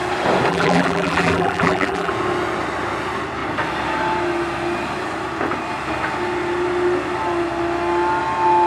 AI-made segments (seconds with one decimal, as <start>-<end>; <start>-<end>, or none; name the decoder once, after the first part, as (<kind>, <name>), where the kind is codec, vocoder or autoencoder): 0.5-2.1 (vocoder, BigVGAN v2)

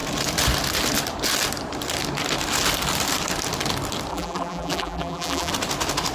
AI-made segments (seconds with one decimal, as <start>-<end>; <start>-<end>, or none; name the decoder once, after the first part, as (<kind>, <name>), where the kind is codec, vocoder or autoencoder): 4.1-5.5 (vocoder, BigVGAN v2)

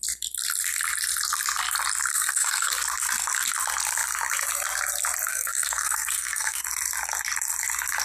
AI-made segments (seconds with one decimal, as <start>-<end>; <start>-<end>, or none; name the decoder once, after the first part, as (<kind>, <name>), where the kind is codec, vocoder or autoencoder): 2.1-2.7 (codec, SNAC); 5.3-6.6

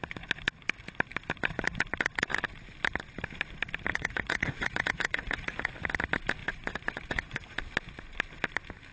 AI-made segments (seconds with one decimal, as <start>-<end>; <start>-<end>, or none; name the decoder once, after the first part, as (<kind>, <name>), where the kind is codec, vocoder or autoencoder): 3.9-5.7 (vocoder, Vocos); 6.4-7.6

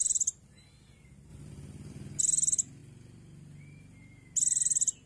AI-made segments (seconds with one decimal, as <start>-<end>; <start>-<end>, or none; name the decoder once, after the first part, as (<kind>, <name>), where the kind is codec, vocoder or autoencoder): none

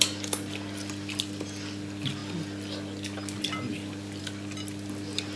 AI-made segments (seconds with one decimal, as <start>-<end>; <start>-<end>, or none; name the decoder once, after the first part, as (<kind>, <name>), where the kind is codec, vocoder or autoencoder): none

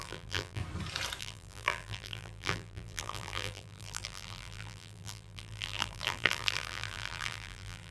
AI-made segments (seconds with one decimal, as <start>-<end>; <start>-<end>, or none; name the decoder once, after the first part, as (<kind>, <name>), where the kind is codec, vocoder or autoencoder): 0.0-0.6 (vocoder, BigVGAN v2); 1.2-7.9